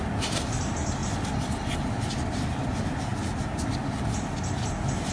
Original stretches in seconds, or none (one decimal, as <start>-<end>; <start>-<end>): 0.0-5.1